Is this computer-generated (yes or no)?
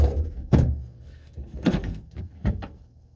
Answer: yes